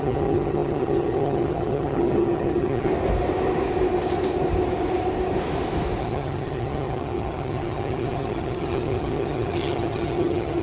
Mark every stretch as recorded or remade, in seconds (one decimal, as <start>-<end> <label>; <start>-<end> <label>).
0.0-2.9 remade; 2.9-6.0 recorded; 6.0-10.6 remade